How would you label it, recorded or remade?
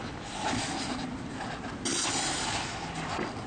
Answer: recorded